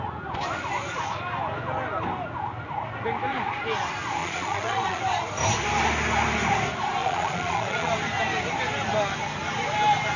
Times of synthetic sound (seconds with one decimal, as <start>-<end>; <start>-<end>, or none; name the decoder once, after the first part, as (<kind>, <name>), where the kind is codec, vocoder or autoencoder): 4.2-5.0 (vocoder, Vocos); 7.0-7.9